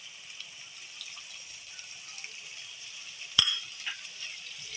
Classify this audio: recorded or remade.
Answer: remade